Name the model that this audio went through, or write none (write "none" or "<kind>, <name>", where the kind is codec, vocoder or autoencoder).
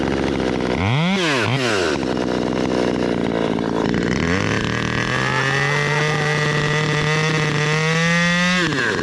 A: none